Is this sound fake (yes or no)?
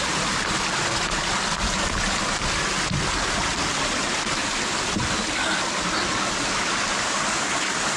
no